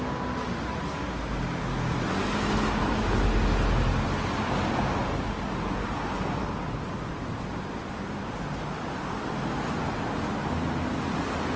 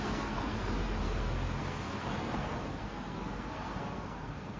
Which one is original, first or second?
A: first